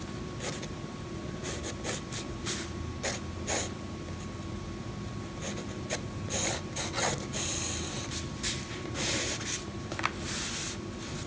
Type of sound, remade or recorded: recorded